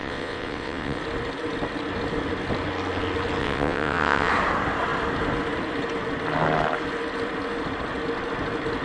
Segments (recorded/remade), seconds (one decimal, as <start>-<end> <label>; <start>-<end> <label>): 0.0-1.0 remade; 1.0-3.4 recorded; 3.4-4.3 remade; 4.3-8.8 recorded